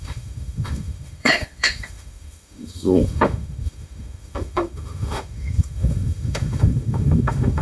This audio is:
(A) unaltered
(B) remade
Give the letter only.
B